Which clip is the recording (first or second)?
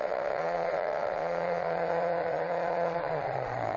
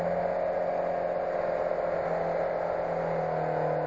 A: second